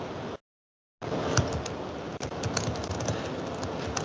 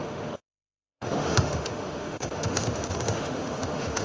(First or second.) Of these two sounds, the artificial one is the second